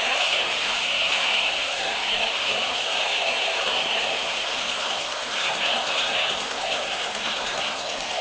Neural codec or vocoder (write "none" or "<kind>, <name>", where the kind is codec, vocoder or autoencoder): codec, SNAC